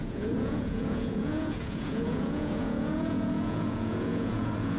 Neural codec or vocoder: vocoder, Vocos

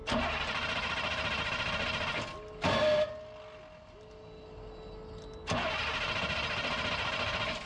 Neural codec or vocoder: none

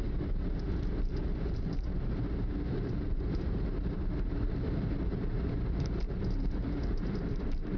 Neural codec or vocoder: vocoder, BigVGAN v2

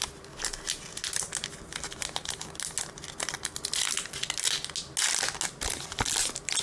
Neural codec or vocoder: none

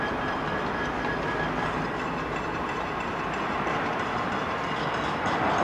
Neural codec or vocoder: none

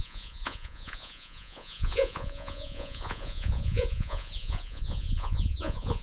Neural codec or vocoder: vocoder, Vocos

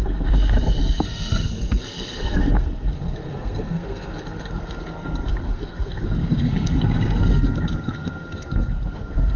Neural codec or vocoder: codec, SNAC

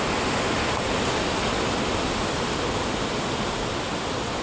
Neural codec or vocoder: none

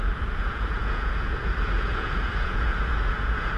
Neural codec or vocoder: vocoder, Vocos